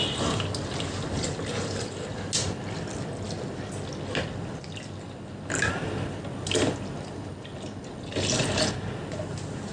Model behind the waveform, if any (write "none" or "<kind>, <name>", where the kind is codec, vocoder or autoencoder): none